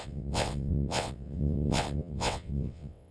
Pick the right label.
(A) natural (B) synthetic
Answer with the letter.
B